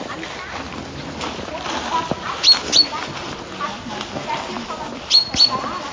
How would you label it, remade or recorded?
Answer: recorded